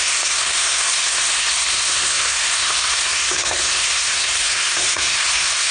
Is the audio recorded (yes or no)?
no